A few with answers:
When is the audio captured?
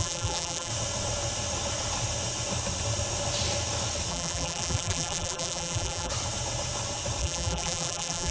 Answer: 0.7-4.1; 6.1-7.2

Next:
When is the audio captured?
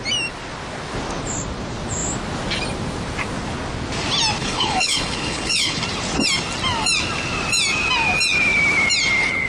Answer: 0.0-4.4; 5.8-9.5